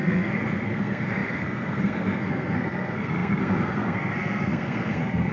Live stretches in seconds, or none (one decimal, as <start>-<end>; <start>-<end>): none